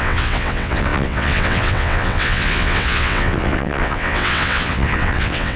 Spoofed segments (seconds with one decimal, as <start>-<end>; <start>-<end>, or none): 0.0-5.6

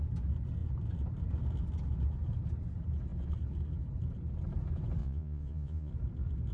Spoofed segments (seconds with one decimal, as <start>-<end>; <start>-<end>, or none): 5.0-5.9